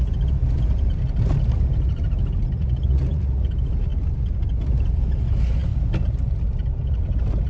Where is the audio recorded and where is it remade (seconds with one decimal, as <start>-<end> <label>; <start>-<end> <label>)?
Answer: 0.0-2.6 recorded; 2.6-3.5 remade; 3.5-7.5 recorded